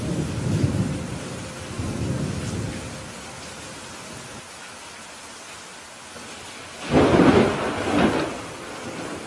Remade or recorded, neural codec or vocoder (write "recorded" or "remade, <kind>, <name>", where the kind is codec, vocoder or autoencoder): recorded